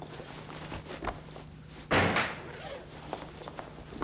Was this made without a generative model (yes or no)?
yes